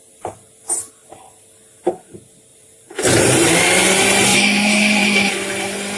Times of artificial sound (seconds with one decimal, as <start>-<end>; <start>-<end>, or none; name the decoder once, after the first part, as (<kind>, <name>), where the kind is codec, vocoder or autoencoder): 2.5-3.2 (vocoder, BigVGAN v2); 4.3-5.3